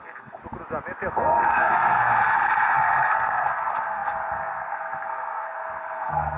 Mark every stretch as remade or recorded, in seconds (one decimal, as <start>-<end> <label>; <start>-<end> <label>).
0.0-0.4 remade; 0.4-1.1 recorded; 1.1-6.4 remade